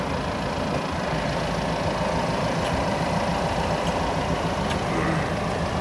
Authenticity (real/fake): real